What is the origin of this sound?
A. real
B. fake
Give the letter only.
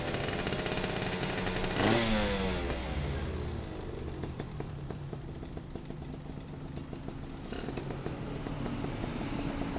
A